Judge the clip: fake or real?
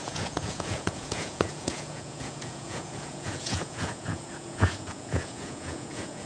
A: fake